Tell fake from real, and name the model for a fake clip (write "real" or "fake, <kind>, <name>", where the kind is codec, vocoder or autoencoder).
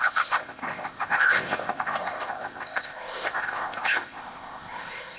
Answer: fake, codec, ZipCodec